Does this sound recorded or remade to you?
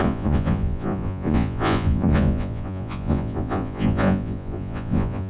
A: remade